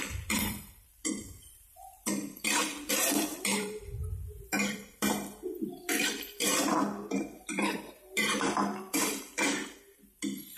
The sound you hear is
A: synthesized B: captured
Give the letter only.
A